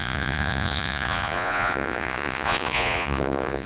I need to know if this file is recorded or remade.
remade